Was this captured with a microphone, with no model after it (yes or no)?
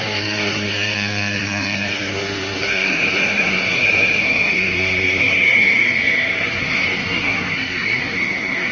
no